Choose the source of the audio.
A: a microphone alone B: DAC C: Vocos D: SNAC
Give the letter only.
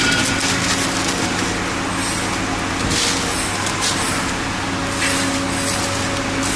A